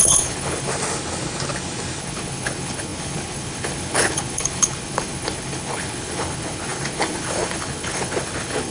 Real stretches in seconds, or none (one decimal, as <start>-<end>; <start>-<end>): 0.7-2.0